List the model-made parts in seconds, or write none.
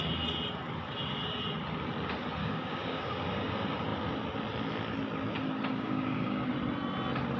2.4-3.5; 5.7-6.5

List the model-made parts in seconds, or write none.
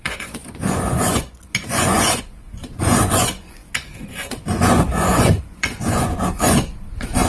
0.0-7.3